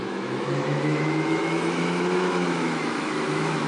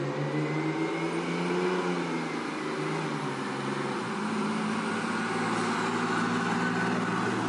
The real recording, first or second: second